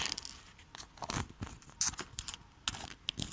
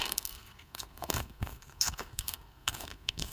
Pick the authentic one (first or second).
first